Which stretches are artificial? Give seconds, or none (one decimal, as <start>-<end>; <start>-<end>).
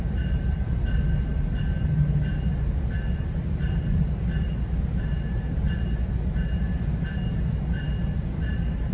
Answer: none